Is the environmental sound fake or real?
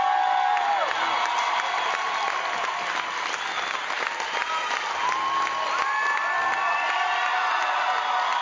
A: real